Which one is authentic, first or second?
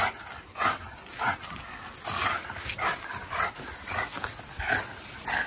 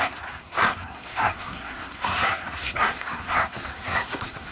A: first